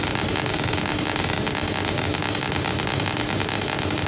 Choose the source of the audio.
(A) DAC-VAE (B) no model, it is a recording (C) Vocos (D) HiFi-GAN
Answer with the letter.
B